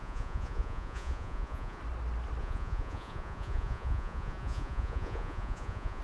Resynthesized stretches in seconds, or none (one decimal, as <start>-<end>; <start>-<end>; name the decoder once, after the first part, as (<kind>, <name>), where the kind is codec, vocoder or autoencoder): 0.0-1.8 (vocoder, Vocos); 2.4-6.0